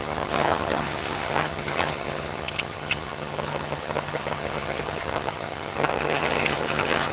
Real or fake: fake